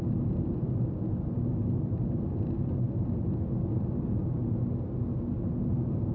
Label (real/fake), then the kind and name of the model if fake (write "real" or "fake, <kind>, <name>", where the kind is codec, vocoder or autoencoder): real